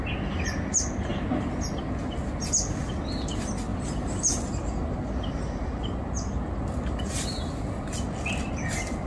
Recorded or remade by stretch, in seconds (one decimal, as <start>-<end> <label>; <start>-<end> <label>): 0.0-3.7 recorded; 3.7-4.4 remade; 4.4-9.1 recorded